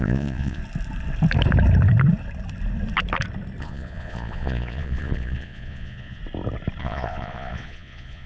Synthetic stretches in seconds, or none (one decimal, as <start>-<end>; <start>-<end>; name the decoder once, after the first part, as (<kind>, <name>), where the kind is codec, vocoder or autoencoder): 0.0-0.6 (vocoder, Vocos); 3.6-6.2; 6.8-8.3